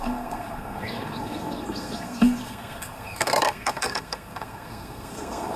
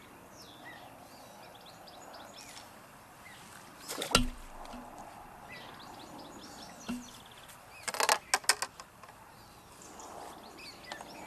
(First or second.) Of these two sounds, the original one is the second